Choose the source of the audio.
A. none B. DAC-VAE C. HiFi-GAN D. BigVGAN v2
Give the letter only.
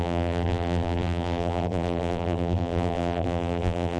D